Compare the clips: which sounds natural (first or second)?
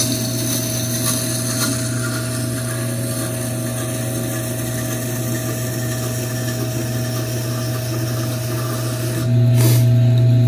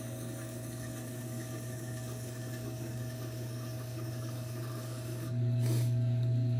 first